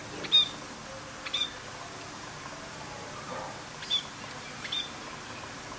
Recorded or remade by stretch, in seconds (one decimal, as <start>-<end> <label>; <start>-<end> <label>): 0.0-1.5 recorded; 1.5-5.8 remade